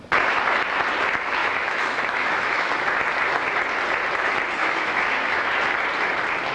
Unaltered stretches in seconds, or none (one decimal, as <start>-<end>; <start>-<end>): 0.0-1.4; 2.7-4.6; 5.5-6.5